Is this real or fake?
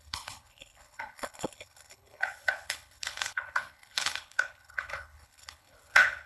fake